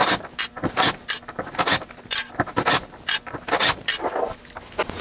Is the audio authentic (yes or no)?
yes